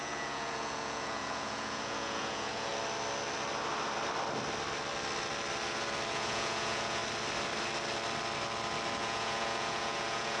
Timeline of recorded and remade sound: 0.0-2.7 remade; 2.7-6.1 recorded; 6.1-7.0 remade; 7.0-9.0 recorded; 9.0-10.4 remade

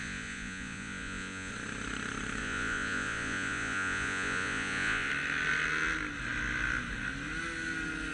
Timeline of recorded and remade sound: 0.0-1.5 remade; 1.5-2.4 recorded; 2.4-5.1 remade; 5.1-8.1 recorded

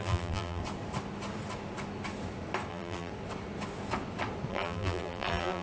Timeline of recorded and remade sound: 0.0-0.6 remade; 0.6-2.7 recorded; 2.7-3.1 remade; 3.1-4.5 recorded; 4.5-5.6 remade

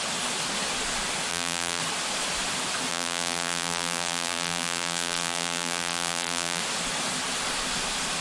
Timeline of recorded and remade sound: 0.0-1.3 recorded; 1.3-1.8 remade; 1.8-2.9 recorded; 2.9-6.6 remade; 6.6-8.2 recorded

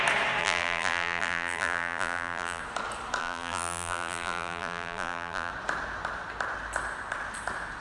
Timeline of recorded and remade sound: 0.0-0.4 recorded; 0.4-2.6 remade; 2.6-3.2 recorded; 3.2-5.5 remade; 5.5-7.8 recorded

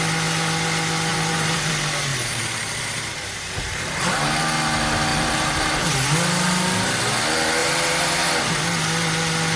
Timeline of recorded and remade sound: 0.0-1.1 recorded; 1.1-1.7 remade; 1.7-2.1 recorded; 2.1-4.4 remade; 4.4-5.1 recorded; 5.1-5.7 remade; 5.7-7.6 recorded; 7.6-8.3 remade; 8.3-9.6 recorded

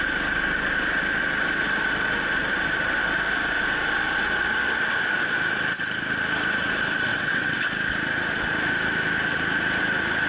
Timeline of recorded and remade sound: 0.0-7.1 recorded; 7.1-7.6 remade; 7.6-10.3 recorded

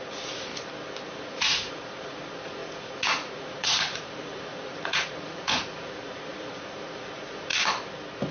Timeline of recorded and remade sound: 0.0-0.5 remade; 0.5-1.1 recorded; 1.1-7.5 remade; 7.5-8.3 recorded